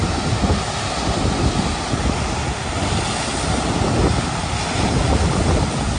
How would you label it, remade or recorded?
recorded